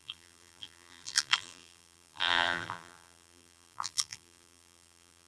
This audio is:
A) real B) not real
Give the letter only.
B